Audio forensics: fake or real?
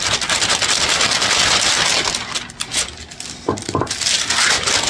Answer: real